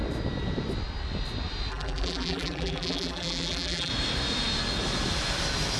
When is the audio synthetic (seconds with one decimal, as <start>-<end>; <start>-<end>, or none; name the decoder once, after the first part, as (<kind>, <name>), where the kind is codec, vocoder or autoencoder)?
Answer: 1.7-3.9 (vocoder, BigVGAN v2)